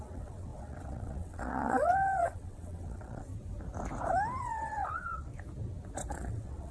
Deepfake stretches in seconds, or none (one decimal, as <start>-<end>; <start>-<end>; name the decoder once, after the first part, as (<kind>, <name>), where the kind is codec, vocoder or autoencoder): 0.0-3.3 (vocoder, WaveNeXt); 4.4-5.3; 6.1-6.7